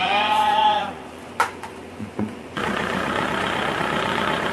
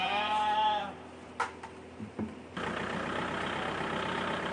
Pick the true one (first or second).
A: second